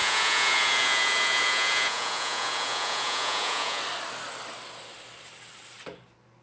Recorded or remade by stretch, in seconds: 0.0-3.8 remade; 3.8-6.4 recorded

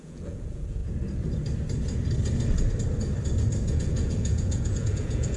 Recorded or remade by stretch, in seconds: 0.0-0.8 remade; 0.8-3.7 recorded; 3.7-5.4 remade

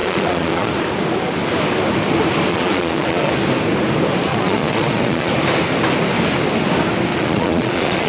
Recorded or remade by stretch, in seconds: 0.0-0.7 remade; 0.7-2.5 recorded; 2.5-3.3 remade; 3.3-4.3 recorded; 4.3-5.3 remade; 5.3-7.1 recorded; 7.1-8.1 remade

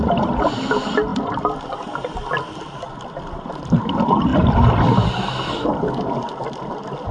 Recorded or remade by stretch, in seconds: 0.0-7.1 recorded

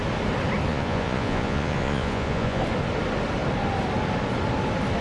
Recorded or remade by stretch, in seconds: 0.0-0.7 recorded; 0.7-2.6 remade; 2.6-5.0 recorded

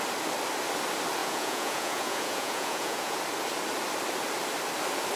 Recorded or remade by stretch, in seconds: 0.0-1.2 recorded; 1.2-3.2 remade; 3.2-5.2 recorded

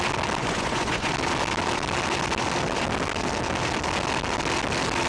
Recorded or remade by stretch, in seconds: 0.0-0.4 recorded; 0.4-1.1 remade; 1.1-5.1 recorded

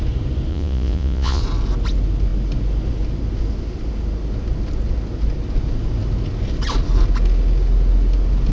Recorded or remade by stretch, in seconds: 0.0-0.5 recorded; 0.5-1.4 remade; 1.4-8.5 recorded